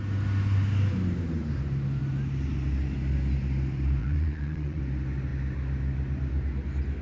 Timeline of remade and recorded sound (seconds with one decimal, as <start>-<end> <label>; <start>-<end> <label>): 0.0-4.0 recorded; 4.0-4.8 remade; 4.8-7.0 recorded